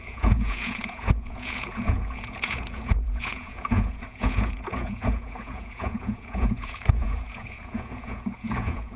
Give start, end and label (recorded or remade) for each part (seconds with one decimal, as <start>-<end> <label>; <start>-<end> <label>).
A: 0.0-9.0 remade